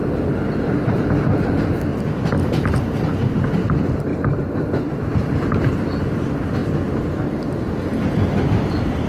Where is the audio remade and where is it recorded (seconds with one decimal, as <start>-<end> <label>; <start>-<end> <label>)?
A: 0.0-2.0 recorded; 2.0-4.1 remade; 4.1-4.9 recorded; 4.9-6.6 remade; 6.6-7.3 recorded; 7.3-9.1 remade